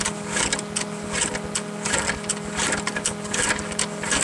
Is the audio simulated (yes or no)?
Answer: no